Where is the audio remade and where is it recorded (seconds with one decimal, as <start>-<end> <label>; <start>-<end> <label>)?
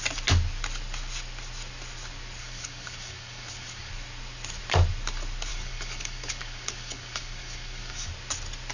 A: 0.0-2.4 recorded; 2.4-3.9 remade; 3.9-5.5 recorded; 5.5-8.1 remade; 8.1-8.7 recorded